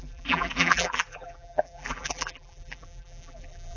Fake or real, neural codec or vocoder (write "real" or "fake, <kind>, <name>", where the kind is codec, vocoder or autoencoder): fake, vocoder, BigVGAN v2